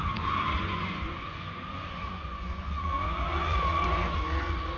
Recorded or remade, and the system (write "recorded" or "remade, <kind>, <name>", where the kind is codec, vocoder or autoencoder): remade, vocoder, Vocos